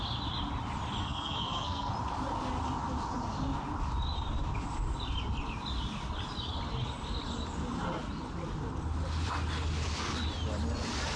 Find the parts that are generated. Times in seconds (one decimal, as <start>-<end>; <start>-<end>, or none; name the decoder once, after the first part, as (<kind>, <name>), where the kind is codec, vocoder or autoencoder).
1.0-1.9 (codec, SNAC)